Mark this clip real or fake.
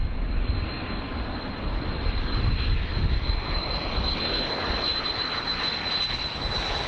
real